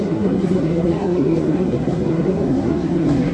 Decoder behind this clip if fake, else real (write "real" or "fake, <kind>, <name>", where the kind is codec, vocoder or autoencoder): fake, codec, SNAC